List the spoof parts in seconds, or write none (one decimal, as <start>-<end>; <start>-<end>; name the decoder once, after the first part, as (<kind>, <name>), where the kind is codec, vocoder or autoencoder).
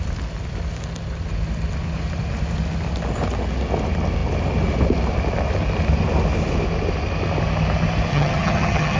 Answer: 8.1-9.0 (vocoder, HiFi-GAN)